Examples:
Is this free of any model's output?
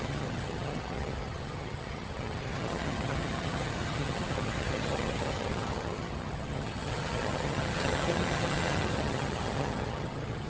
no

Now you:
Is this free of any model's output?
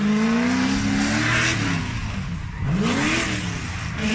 yes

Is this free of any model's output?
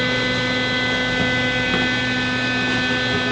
yes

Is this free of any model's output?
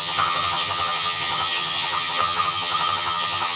no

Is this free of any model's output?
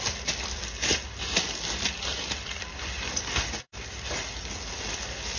yes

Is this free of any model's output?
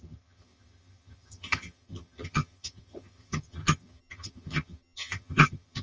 no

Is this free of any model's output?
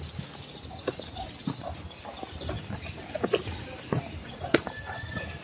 yes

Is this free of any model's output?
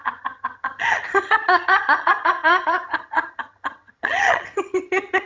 no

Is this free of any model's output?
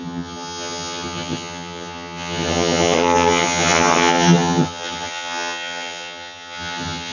no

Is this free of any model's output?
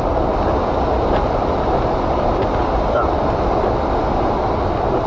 yes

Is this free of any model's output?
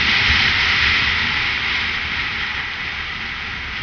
yes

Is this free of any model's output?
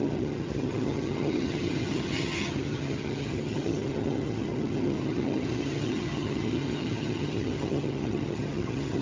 no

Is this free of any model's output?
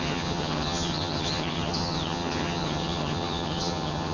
no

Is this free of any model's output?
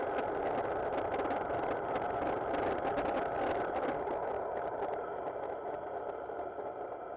yes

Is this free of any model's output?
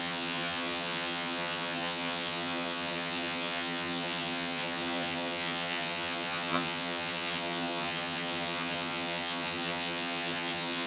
no